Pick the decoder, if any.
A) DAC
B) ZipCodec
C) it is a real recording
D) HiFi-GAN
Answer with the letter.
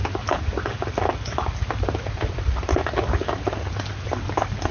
C